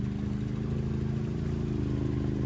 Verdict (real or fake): real